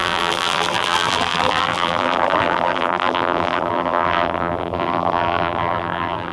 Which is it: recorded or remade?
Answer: remade